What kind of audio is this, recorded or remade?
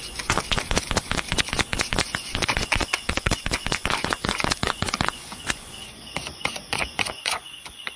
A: remade